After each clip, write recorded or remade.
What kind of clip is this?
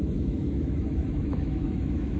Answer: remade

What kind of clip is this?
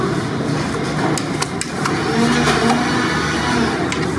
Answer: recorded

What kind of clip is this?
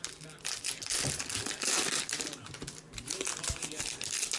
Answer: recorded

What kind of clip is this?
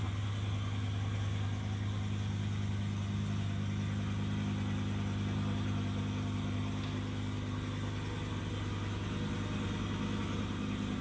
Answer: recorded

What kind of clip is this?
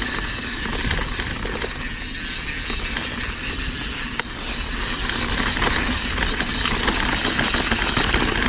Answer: recorded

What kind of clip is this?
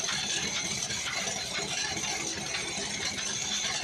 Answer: recorded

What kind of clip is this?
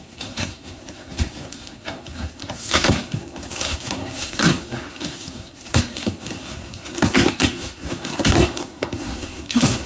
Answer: remade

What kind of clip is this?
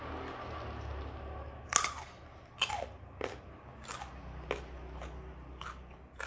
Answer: recorded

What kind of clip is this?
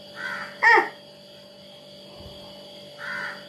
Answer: recorded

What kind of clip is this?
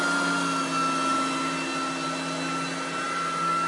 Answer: recorded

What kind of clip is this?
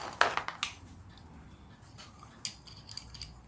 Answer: recorded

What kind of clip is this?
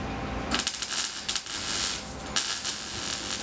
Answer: recorded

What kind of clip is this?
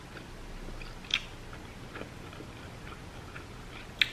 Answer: recorded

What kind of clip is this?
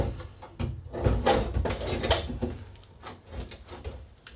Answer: recorded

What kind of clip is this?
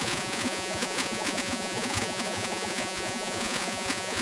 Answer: remade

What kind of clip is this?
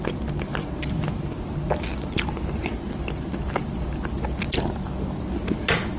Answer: recorded